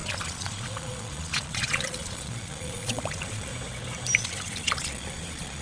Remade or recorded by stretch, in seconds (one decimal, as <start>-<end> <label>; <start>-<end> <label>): 0.0-3.5 remade; 3.5-4.2 recorded; 4.2-5.6 remade